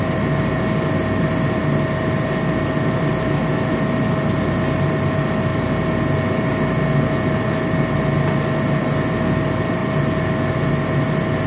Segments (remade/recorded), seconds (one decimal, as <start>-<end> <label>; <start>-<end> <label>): 0.0-11.5 recorded